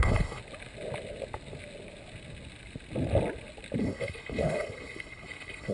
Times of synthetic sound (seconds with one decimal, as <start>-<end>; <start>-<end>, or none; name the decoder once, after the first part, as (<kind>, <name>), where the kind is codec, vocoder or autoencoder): 0.0-0.4 (codec, HILCodec); 3.8-5.7